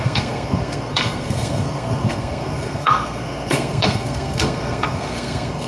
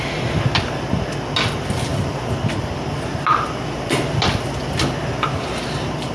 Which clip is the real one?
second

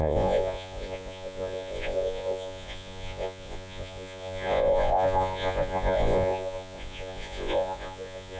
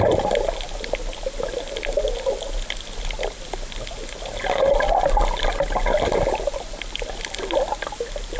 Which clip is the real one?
second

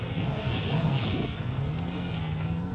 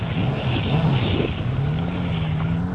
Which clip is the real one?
second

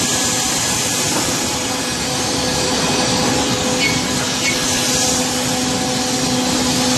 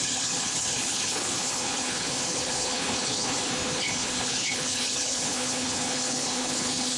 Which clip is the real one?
first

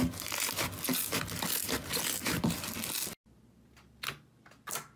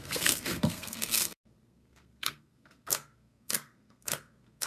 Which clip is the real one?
first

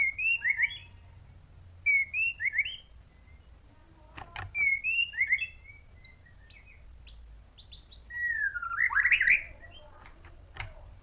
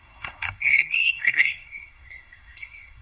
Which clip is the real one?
first